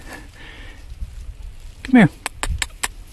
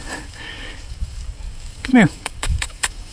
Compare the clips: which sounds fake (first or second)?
second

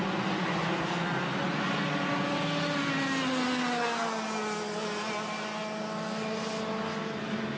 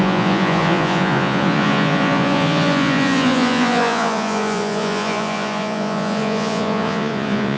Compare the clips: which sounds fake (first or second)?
second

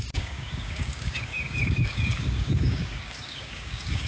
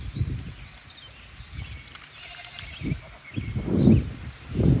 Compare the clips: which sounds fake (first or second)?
first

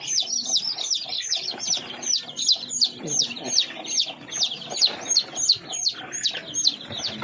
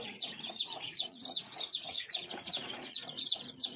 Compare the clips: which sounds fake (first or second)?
second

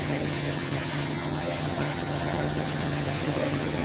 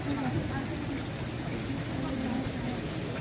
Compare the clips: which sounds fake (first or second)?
first